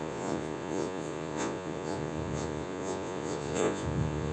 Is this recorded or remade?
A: remade